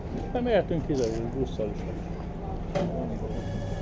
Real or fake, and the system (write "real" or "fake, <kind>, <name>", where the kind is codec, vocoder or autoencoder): real